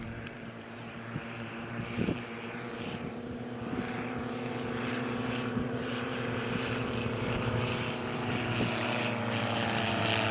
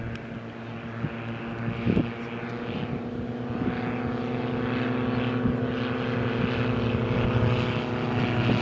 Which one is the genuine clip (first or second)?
second